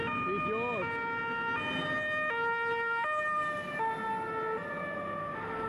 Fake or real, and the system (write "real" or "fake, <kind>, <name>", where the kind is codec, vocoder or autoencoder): real